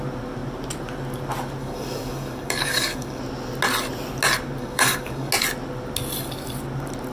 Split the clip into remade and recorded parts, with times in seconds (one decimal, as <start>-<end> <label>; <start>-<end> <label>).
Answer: 0.0-1.6 recorded; 1.6-3.2 remade; 3.2-4.6 recorded; 4.6-5.3 remade; 5.3-7.1 recorded

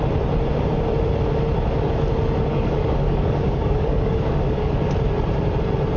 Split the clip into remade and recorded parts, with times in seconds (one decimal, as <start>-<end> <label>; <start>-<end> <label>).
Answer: 0.0-2.5 recorded; 2.5-4.7 remade; 4.7-6.0 recorded

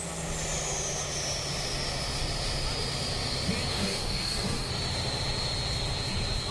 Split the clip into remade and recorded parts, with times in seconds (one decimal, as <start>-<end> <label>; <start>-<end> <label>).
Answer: 0.0-3.7 recorded; 3.7-4.7 remade; 4.7-6.5 recorded

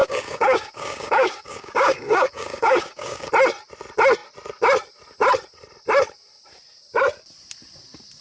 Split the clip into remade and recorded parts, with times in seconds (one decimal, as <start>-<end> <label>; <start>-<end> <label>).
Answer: 0.0-3.3 remade; 3.3-8.2 recorded

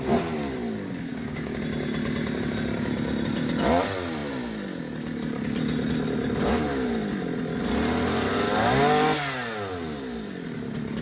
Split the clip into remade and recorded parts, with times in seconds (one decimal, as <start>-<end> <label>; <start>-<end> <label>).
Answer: 0.0-1.1 recorded; 1.1-1.6 remade; 1.6-11.0 recorded

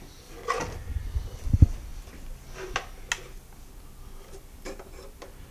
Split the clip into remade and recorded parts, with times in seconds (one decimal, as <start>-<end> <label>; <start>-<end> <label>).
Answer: 0.0-5.5 recorded